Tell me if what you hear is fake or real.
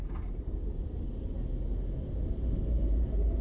real